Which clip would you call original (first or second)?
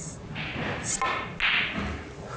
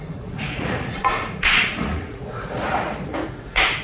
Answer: first